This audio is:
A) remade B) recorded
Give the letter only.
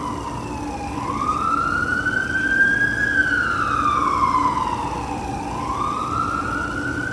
B